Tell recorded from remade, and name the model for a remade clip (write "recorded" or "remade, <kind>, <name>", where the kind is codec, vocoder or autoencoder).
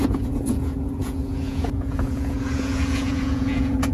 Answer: remade, vocoder, Vocos